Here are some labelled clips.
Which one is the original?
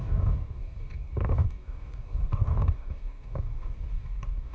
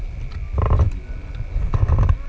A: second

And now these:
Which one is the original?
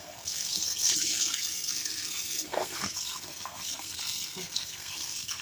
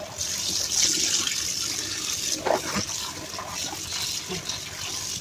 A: second